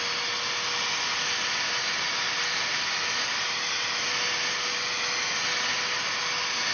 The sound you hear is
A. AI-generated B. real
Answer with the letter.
B